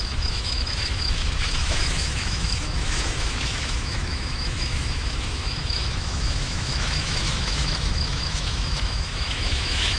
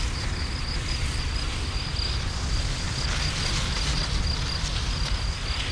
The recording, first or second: second